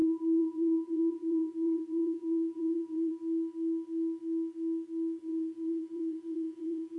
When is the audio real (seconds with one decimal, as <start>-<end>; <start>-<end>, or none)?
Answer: 3.1-5.2